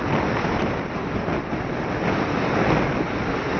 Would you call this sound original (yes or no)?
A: yes